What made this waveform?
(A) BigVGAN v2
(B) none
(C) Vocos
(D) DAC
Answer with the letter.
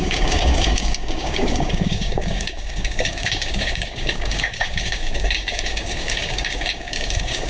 D